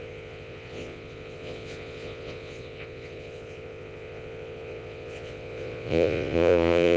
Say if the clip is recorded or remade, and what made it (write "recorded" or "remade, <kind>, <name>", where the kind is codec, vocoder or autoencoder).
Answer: remade, vocoder, Vocos